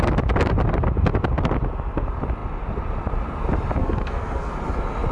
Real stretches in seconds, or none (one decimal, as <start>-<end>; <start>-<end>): 0.0-3.8; 4.5-5.1